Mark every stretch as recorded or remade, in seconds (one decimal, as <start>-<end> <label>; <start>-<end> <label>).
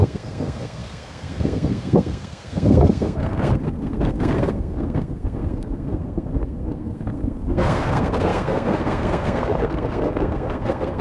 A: 0.0-11.0 remade